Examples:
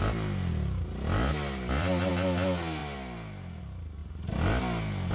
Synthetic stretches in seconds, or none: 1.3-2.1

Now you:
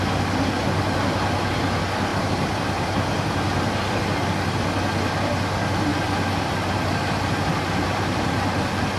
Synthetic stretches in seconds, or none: 2.1-4.0; 7.5-8.3

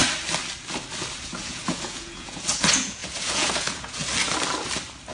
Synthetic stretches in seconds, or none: 1.4-4.0

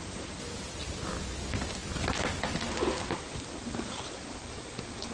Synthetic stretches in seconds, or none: none

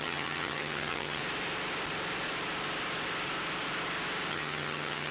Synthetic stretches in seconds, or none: 0.0-1.2; 4.3-5.1

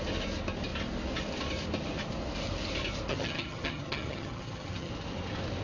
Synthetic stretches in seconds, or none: 3.1-4.9